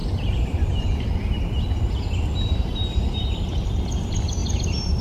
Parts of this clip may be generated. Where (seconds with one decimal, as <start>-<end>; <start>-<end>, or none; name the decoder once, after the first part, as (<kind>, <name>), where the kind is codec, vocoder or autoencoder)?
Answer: 0.0-3.0 (vocoder, BigVGAN v2); 4.4-5.0